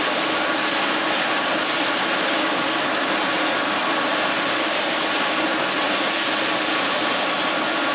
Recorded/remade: recorded